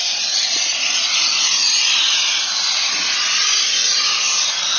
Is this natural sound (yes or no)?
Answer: yes